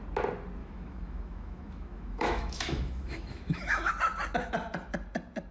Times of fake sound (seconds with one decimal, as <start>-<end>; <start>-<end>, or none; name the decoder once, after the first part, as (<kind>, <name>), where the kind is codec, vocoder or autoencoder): 0.6-3.9 (autoencoder, DAC-VAE)